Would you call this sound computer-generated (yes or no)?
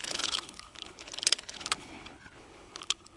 yes